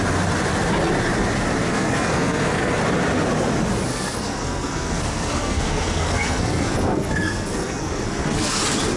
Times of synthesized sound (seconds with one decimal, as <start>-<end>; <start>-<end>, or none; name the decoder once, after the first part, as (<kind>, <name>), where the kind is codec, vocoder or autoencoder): 1.7-2.7 (codec, SNAC); 3.9-8.6